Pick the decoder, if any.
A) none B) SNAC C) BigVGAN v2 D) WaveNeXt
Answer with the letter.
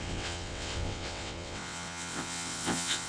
D